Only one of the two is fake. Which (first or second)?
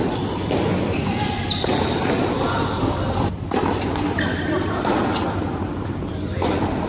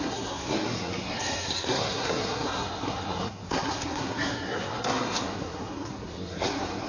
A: second